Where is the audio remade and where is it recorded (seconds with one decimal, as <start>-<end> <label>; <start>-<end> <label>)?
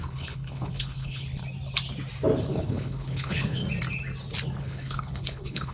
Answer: 0.0-1.4 remade; 1.4-2.5 recorded; 2.5-3.6 remade; 3.6-4.6 recorded; 4.6-5.7 remade